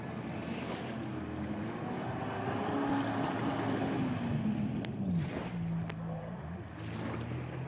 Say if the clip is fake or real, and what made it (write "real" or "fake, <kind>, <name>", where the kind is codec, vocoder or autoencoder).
real